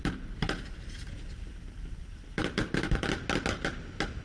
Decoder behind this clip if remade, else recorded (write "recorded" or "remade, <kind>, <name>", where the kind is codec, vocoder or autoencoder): recorded